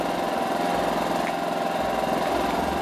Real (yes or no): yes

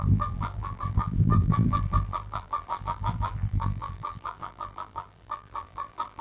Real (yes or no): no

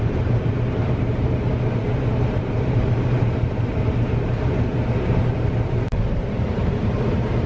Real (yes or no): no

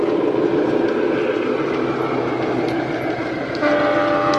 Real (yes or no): yes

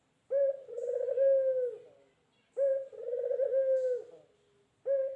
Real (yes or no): yes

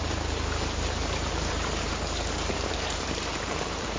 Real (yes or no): no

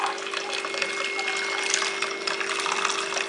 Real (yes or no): yes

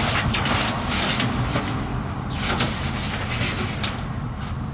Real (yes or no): yes